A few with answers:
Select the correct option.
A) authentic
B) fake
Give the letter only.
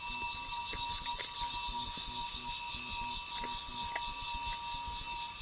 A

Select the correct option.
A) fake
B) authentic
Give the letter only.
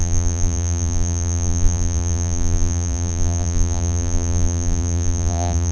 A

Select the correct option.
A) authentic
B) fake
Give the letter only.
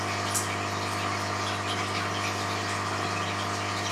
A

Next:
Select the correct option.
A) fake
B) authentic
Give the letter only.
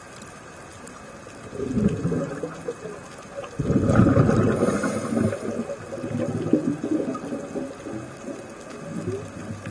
B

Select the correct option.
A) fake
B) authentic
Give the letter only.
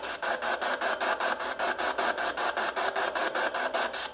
B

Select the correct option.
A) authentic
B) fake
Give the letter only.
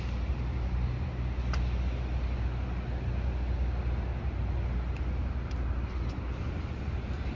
A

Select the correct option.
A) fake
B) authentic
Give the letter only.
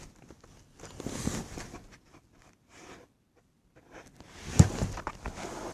B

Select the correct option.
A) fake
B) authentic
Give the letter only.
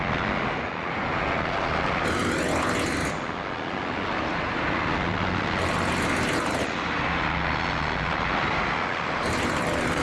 B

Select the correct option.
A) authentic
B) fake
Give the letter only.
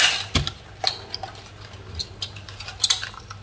A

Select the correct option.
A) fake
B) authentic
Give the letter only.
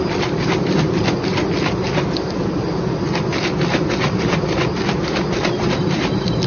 B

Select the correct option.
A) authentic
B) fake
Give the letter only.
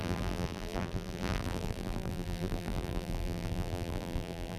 B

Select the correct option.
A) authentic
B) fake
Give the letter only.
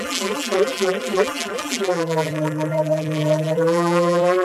B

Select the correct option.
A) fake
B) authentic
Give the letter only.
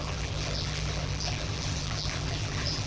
A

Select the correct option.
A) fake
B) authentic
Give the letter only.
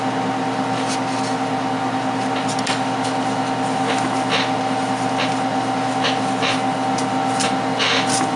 B